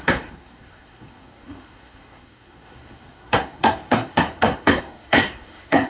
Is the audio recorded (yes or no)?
no